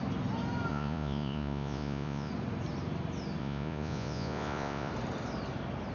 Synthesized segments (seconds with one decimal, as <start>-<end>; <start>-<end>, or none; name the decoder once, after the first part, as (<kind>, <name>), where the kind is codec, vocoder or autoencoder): 0.7-2.3 (vocoder, Vocos); 3.4-4.9